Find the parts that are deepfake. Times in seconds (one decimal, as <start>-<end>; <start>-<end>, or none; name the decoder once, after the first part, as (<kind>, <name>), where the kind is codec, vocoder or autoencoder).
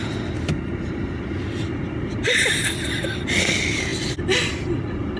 none